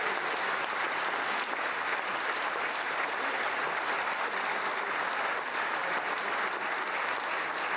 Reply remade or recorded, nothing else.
recorded